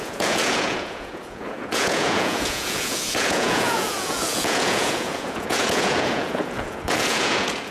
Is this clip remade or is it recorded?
remade